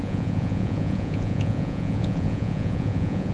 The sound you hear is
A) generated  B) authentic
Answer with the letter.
A